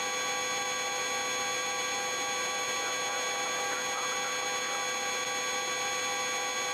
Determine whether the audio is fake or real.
real